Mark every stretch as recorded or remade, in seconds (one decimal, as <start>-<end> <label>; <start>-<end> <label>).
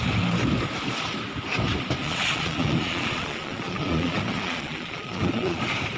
0.0-2.0 recorded; 2.0-5.6 remade; 5.6-6.0 recorded